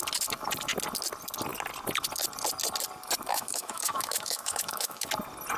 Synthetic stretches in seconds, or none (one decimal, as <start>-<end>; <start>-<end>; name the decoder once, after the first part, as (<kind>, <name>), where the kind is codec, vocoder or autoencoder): 3.3-5.1 (autoencoder, DAC-VAE)